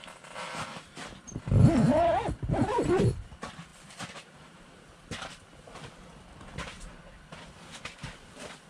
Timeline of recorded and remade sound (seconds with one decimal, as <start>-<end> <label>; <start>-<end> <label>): 0.0-3.7 recorded; 3.7-7.8 remade; 7.8-8.7 recorded